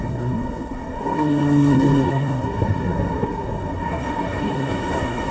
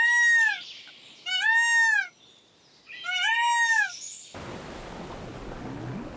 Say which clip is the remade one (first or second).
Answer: first